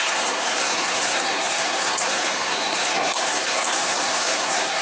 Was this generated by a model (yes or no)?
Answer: yes